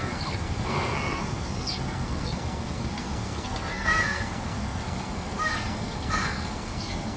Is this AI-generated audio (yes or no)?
yes